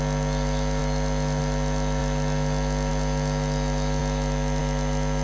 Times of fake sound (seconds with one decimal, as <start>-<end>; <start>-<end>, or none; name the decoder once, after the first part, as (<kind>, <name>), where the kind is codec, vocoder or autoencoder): none